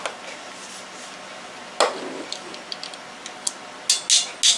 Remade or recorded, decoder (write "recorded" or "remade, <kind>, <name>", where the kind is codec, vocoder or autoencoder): recorded